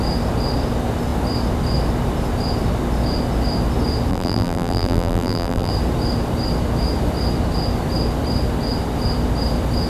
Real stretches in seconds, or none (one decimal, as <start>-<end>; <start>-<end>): 0.0-4.1; 5.7-9.9